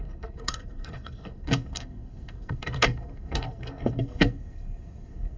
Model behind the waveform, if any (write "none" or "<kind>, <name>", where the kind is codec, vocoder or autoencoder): codec, SNAC